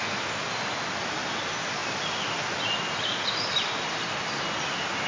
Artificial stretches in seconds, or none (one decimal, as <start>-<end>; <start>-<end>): none

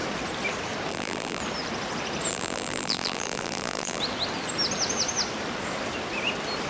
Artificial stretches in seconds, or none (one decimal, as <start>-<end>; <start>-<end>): 0.9-1.4; 2.3-4.0

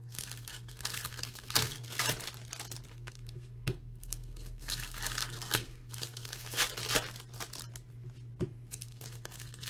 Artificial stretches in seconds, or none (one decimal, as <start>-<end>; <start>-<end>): 0.0-2.0; 2.9-6.6; 8.7-9.7